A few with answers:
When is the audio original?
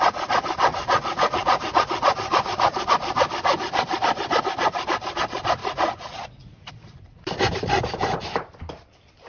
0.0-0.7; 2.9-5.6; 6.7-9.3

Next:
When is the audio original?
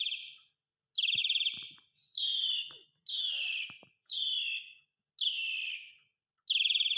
0.0-1.2; 1.7-7.0